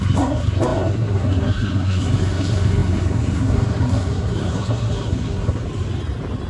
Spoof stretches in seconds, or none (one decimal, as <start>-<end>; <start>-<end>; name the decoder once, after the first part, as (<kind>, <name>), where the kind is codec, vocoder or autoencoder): 0.0-5.6 (codec, SNAC)